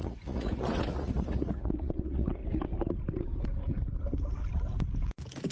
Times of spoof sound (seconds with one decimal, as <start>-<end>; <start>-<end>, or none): 0.0-2.4